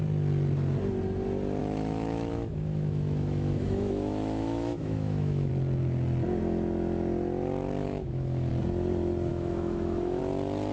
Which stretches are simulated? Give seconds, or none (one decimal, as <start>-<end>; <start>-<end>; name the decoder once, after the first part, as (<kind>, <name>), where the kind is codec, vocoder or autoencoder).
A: 1.6-5.5 (autoencoder, DAC-VAE); 7.8-8.5; 9.3-10.2